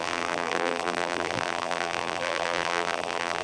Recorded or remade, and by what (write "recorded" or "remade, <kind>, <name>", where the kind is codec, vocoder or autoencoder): remade, vocoder, BigVGAN v2